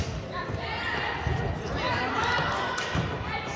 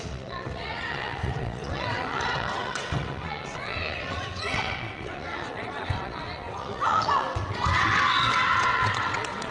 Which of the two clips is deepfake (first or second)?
second